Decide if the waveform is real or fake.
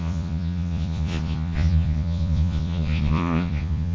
fake